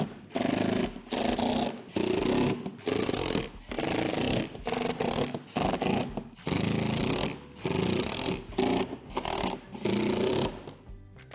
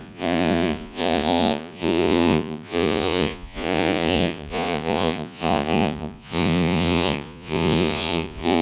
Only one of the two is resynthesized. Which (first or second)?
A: second